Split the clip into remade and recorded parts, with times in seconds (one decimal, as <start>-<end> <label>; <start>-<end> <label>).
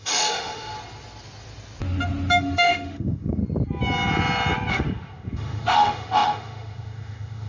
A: 0.0-0.7 remade; 0.7-2.3 recorded; 2.3-3.4 remade; 3.4-4.7 recorded; 4.7-7.5 remade